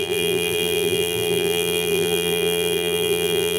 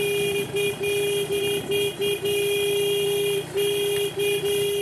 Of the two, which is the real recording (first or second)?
second